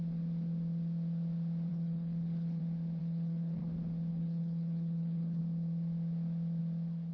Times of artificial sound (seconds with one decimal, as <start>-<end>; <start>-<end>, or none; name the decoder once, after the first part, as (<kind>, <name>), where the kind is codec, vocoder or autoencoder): 1.7-2.6 (codec, HILCodec); 3.0-3.6; 4.1-5.4